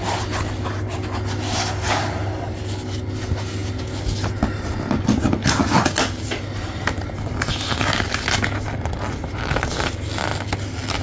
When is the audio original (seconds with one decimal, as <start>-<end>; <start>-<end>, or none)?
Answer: 0.0-11.0